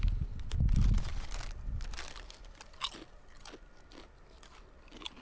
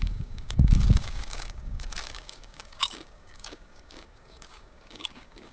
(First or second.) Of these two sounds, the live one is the first